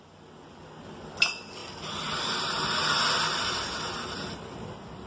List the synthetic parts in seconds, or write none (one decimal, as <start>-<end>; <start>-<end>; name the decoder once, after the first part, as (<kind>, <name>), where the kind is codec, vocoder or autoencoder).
none